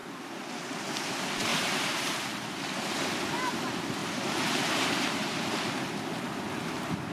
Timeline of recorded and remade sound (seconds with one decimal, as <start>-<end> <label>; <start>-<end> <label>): 0.0-1.5 recorded; 1.5-2.6 remade; 2.6-4.0 recorded; 4.0-5.5 remade; 5.5-7.1 recorded